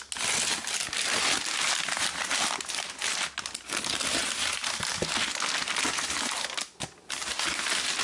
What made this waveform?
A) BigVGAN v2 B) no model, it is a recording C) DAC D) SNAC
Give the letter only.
B